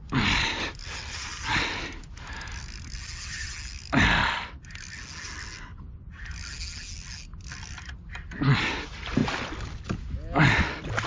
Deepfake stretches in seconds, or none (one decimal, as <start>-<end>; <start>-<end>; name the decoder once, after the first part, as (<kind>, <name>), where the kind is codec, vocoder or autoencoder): none